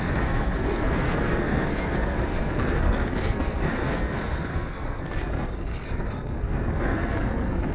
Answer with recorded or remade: remade